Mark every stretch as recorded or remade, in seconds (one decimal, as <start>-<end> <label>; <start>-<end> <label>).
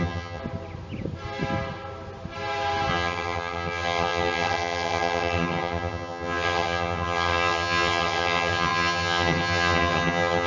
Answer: 0.0-0.4 remade; 0.4-2.9 recorded; 2.9-10.5 remade